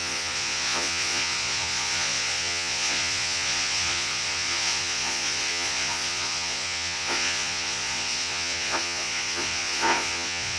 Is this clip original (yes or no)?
no